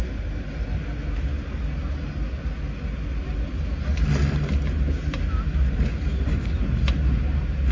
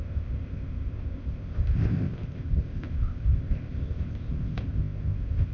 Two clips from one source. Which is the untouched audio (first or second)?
first